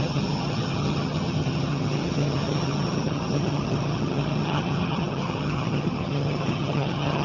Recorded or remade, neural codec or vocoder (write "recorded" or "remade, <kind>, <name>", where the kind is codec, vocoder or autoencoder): remade, vocoder, HiFi-GAN